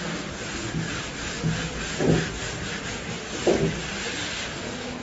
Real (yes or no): yes